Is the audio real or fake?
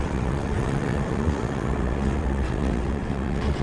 fake